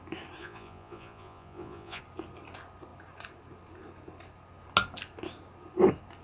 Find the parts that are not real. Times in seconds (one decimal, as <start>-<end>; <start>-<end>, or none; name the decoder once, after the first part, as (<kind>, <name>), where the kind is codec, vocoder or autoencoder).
0.4-2.0 (vocoder, Vocos)